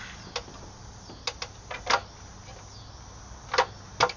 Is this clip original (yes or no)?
yes